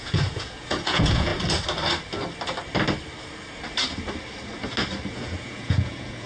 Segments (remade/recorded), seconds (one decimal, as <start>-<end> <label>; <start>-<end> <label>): 0.0-1.3 remade; 1.3-5.1 recorded; 5.1-6.3 remade